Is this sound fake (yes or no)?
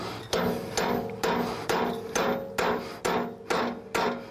no